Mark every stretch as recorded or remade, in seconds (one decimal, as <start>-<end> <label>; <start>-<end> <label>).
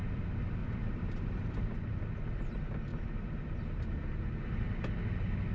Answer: 0.0-0.6 recorded; 0.6-1.7 remade; 1.7-2.9 recorded; 2.9-4.9 remade; 4.9-5.5 recorded